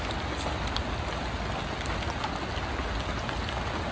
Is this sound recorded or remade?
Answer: recorded